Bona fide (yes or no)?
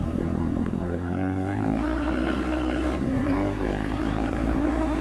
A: no